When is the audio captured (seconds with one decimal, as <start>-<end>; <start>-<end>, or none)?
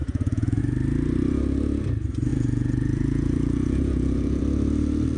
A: 0.6-2.3; 4.4-5.2